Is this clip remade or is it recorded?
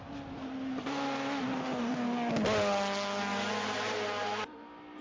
recorded